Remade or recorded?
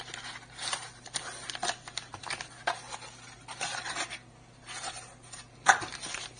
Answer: recorded